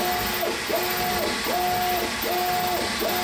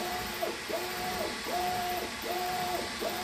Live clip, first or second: first